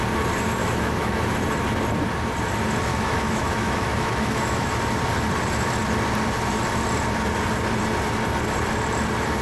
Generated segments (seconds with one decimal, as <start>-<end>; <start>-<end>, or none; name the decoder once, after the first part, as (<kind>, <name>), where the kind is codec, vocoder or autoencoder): 0.6-1.2 (autoencoder, DAC-VAE); 2.9-4.7